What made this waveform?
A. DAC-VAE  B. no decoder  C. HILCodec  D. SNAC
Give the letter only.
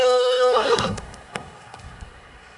D